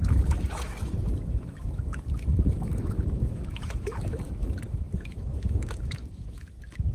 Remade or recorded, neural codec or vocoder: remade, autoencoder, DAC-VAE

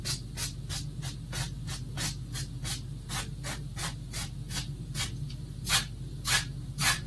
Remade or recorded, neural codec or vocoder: recorded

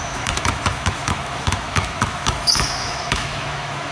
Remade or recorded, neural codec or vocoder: remade, autoencoder, DAC-VAE